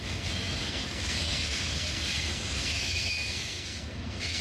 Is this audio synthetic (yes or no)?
yes